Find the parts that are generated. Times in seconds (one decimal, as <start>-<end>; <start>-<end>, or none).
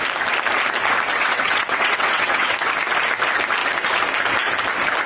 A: 1.1-2.7